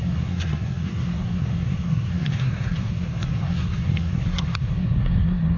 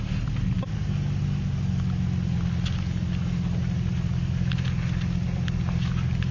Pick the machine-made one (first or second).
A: first